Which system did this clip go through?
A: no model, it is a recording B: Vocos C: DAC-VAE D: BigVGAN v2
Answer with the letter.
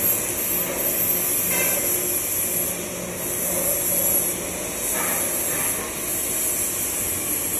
A